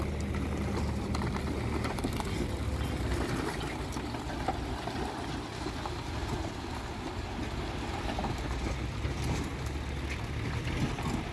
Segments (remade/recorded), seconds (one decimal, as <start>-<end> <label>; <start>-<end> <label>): 0.0-11.3 recorded